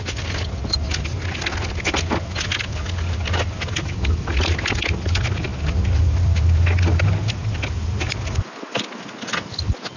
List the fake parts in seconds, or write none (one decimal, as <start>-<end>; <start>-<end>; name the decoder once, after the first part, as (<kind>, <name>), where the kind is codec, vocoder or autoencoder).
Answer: none